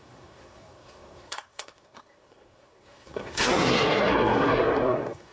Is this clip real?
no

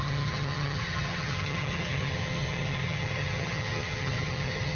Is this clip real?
no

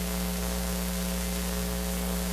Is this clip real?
no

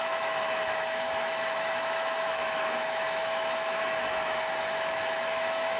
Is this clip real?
no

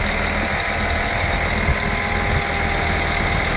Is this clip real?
yes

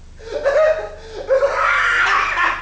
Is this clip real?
yes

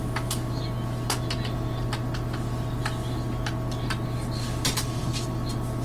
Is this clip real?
yes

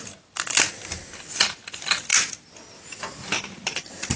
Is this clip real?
yes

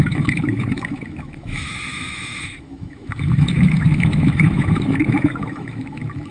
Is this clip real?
no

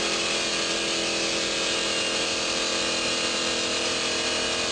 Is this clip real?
yes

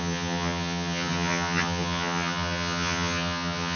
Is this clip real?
no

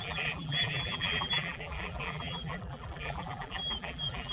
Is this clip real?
no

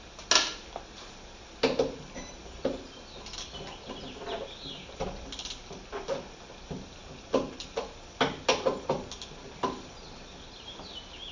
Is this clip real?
yes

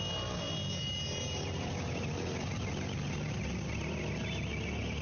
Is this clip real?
yes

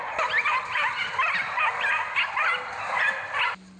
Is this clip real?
yes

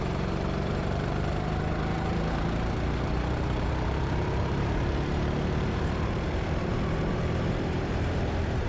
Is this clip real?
no